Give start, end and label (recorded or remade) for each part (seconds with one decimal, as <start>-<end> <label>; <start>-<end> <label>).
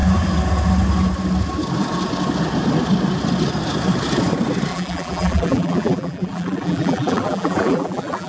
0.0-4.7 recorded; 4.7-8.3 remade